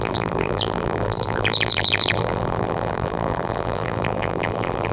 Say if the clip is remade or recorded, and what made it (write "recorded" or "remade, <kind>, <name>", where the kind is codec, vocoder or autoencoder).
remade, vocoder, BigVGAN v2